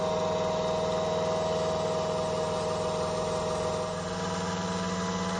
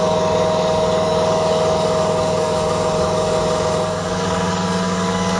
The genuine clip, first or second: first